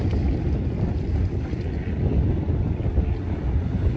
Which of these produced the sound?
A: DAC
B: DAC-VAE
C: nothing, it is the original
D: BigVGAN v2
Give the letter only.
C